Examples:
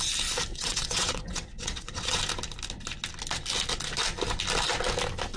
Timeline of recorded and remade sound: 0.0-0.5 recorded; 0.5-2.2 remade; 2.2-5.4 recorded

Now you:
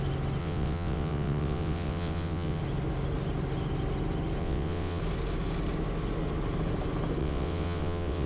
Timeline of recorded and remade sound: 0.0-0.4 recorded; 0.4-2.6 remade; 2.6-4.4 recorded; 4.4-5.0 remade; 5.0-7.2 recorded; 7.2-8.3 remade

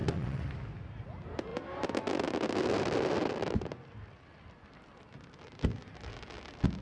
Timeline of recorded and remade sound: 0.0-0.5 remade; 0.5-6.8 recorded

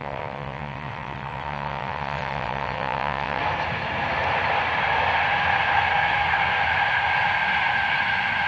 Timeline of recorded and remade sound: 0.0-3.4 remade; 3.4-8.5 recorded

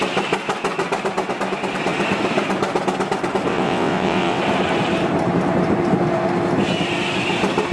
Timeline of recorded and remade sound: 0.0-3.5 recorded; 3.5-4.4 remade; 4.4-7.7 recorded

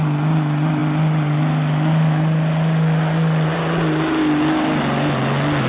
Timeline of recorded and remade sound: 0.0-5.7 recorded